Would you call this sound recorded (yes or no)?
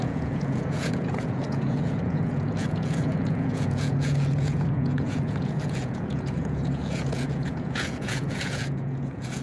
no